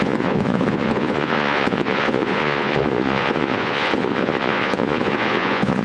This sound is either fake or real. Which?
fake